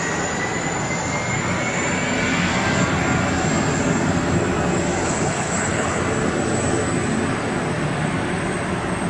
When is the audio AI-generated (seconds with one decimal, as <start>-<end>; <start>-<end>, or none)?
5.0-6.0